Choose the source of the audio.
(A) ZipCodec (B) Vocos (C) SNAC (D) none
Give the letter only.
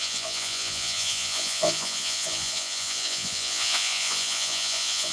B